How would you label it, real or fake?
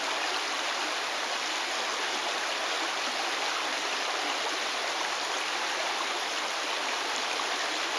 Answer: real